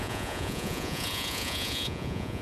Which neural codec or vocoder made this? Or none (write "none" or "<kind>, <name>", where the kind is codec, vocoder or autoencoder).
vocoder, Vocos